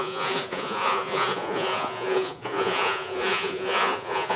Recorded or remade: remade